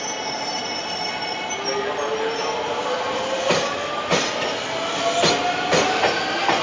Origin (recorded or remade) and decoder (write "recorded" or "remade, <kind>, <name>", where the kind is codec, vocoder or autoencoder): recorded